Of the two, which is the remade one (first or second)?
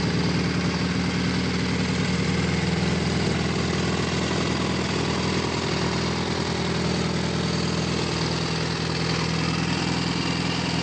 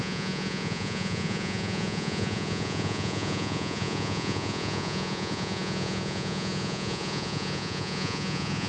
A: second